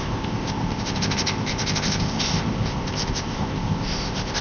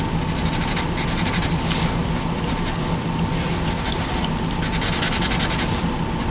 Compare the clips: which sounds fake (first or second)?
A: first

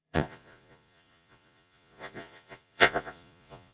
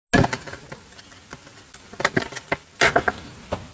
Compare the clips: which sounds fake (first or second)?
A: first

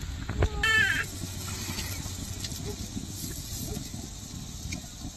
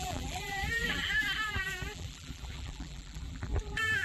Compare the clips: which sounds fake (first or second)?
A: second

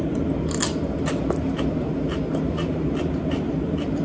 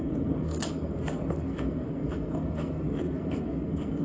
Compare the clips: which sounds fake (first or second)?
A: second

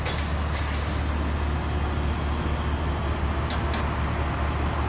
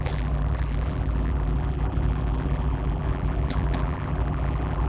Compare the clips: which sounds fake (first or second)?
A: second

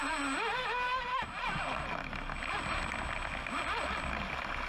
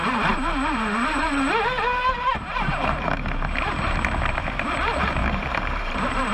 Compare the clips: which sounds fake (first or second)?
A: second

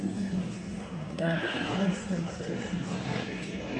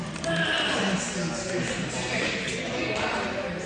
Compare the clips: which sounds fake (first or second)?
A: first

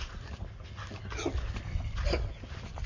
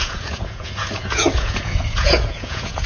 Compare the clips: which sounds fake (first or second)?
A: second